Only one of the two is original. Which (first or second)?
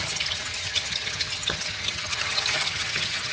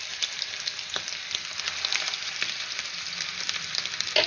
second